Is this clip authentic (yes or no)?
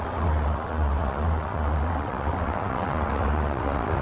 no